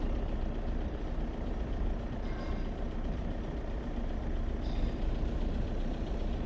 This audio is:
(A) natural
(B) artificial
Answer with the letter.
A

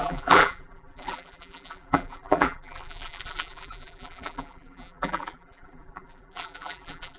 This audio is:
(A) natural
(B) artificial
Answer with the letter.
B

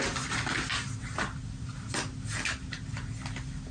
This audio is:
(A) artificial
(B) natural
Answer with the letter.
B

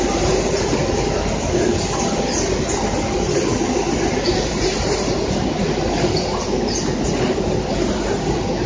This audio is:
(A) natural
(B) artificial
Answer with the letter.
A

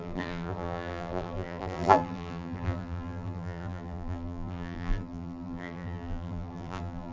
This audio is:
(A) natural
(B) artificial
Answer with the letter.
B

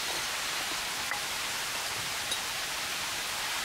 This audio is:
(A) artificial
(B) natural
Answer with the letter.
B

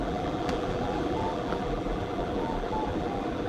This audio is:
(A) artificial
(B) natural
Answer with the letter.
A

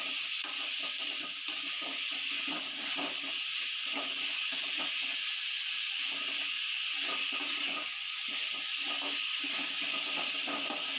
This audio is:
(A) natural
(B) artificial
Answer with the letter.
A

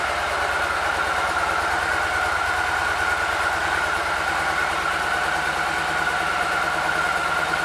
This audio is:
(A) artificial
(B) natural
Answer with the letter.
A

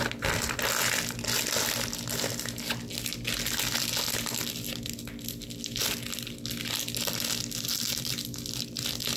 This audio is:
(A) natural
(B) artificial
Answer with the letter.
A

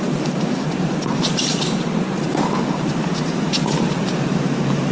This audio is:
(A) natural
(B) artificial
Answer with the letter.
B